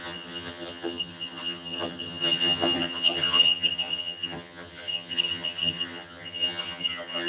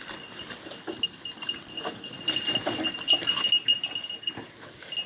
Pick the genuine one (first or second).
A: second